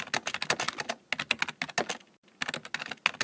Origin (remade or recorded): recorded